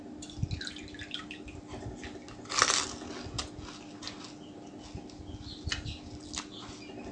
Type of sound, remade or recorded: recorded